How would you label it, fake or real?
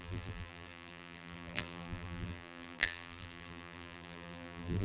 fake